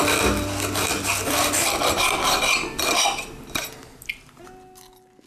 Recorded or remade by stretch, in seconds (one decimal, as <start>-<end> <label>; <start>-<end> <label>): 0.0-0.9 recorded; 0.9-3.0 remade; 3.0-5.3 recorded